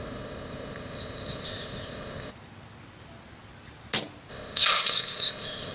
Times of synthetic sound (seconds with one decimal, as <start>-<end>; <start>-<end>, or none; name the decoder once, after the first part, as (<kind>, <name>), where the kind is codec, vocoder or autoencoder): 0.0-2.3 (codec, ZipCodec); 4.3-5.7